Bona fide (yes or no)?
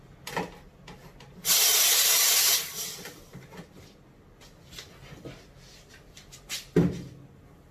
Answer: yes